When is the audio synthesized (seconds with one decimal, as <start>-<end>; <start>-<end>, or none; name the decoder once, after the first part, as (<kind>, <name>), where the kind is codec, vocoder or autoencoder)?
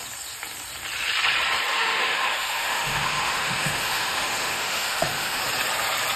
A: 1.7-5.4 (autoencoder, DAC-VAE)